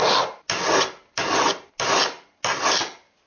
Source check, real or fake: real